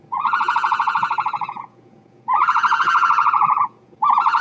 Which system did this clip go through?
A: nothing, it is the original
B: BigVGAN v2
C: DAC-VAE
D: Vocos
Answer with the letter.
D